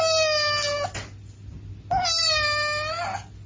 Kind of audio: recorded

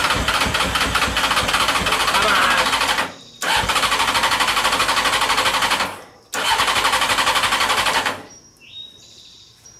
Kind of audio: recorded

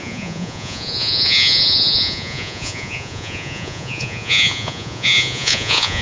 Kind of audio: remade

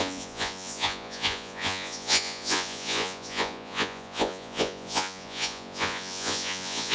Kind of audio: remade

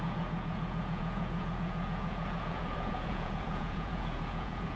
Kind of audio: remade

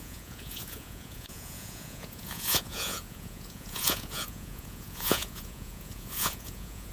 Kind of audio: remade